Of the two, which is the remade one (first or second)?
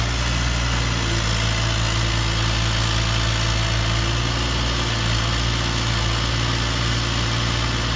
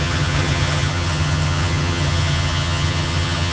second